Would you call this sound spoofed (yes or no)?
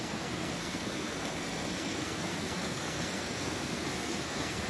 yes